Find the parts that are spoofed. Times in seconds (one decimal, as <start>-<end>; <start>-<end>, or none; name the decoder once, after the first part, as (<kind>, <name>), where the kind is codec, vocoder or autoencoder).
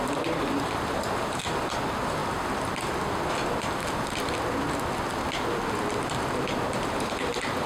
0.0-2.2 (vocoder, BigVGAN v2); 6.8-7.7